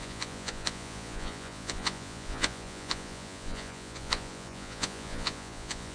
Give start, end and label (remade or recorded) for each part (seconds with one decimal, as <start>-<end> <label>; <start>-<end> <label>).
0.0-5.9 remade